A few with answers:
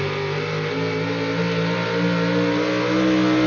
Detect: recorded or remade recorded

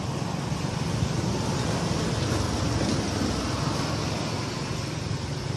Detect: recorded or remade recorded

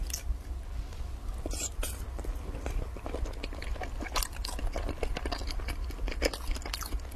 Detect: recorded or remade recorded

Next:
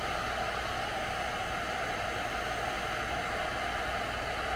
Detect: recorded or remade recorded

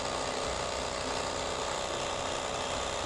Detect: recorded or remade recorded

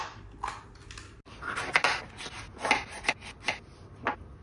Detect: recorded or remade recorded